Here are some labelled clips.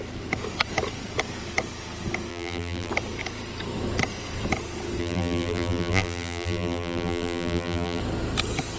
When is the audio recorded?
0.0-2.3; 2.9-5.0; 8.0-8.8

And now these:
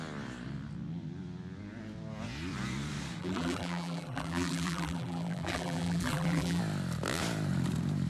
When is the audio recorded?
0.0-3.2; 6.6-8.1